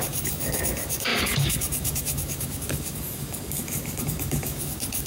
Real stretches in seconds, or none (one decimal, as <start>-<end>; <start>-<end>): none